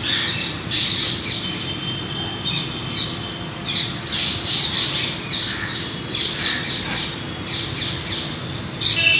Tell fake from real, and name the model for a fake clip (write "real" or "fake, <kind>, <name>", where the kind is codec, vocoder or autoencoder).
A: real